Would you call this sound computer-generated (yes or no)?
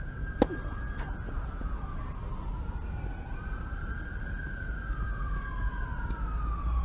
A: no